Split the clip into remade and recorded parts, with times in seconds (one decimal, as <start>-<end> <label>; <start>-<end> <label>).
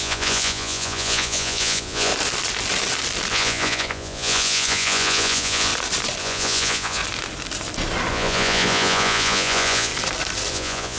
0.0-2.1 remade; 2.1-3.3 recorded; 3.3-5.7 remade; 5.7-6.2 recorded; 6.2-7.0 remade; 7.0-8.1 recorded; 8.1-9.9 remade; 9.9-10.5 recorded; 10.5-11.0 remade